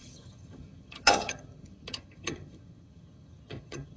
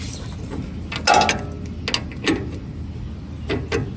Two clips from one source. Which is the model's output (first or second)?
first